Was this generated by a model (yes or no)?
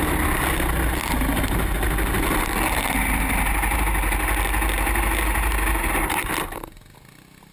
no